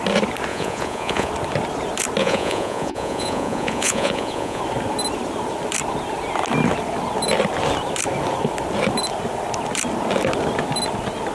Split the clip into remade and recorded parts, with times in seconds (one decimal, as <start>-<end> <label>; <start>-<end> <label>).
0.0-0.5 recorded; 0.5-1.3 remade; 1.3-2.2 recorded; 2.2-4.6 remade; 4.6-11.3 recorded